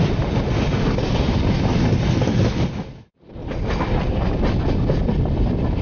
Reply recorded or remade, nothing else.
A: recorded